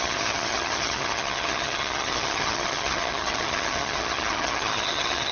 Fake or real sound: fake